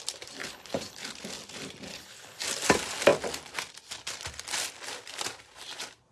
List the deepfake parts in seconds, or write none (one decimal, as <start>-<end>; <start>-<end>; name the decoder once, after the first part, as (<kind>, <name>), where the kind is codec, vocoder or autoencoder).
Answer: 0.4-1.1 (codec, HILCodec); 1.9-2.4

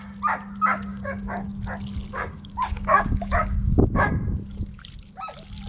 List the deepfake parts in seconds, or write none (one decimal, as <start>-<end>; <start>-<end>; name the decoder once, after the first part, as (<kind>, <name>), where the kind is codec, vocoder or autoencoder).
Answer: 0.9-1.5 (codec, DAC); 2.1-4.2

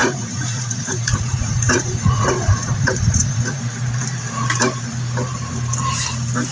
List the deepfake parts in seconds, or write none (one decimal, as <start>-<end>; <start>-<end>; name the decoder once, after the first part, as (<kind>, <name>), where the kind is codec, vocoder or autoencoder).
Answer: 0.0-3.6 (vocoder, Vocos)

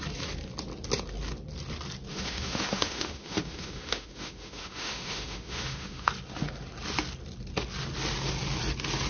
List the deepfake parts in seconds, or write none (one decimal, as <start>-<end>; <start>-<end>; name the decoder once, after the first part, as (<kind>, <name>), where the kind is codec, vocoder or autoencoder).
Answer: 2.1-6.1 (autoencoder, DAC-VAE)

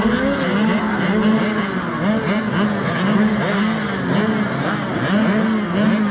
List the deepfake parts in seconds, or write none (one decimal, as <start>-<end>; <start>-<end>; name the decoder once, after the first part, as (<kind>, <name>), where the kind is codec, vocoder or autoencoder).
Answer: none